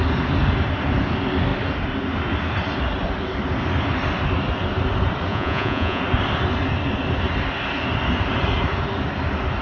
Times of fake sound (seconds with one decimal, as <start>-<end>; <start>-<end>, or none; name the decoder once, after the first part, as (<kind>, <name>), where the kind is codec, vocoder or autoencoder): 5.3-6.0 (vocoder, Vocos)